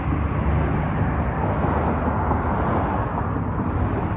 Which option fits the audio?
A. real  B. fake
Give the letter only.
A